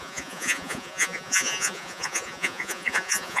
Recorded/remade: remade